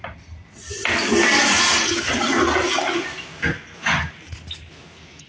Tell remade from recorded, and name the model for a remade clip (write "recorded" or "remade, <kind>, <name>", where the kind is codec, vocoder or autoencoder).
recorded